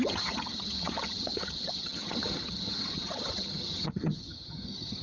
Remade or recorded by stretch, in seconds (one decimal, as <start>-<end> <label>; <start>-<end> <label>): 0.0-5.0 remade